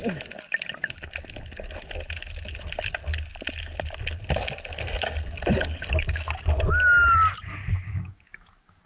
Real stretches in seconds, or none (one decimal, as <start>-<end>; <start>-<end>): 0.0-7.6